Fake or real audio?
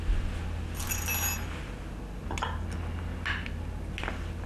real